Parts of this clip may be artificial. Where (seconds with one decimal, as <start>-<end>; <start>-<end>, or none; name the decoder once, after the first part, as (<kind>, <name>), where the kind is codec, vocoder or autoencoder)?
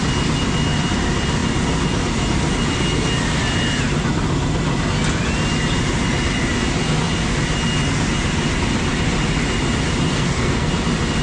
10.1-10.7 (codec, SNAC)